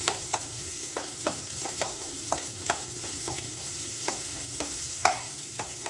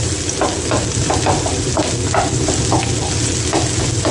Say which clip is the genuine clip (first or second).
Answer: second